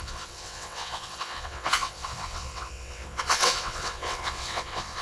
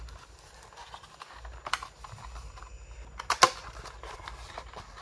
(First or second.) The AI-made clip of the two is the first